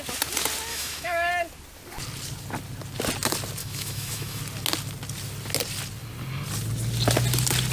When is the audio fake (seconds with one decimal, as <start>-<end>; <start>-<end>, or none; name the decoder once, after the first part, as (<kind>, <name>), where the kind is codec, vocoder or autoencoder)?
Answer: 0.7-1.3 (autoencoder, DAC-VAE); 3.6-4.4